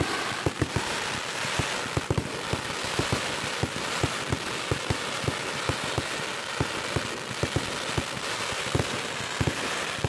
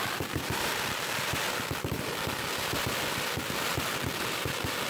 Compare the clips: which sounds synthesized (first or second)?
second